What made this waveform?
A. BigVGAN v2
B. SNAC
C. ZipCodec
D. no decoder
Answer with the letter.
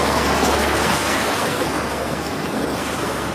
B